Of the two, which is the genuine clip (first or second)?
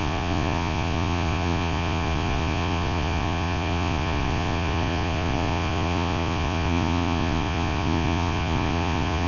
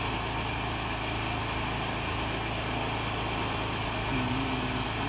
second